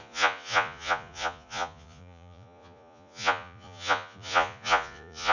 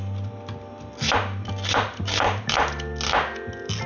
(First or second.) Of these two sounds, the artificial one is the first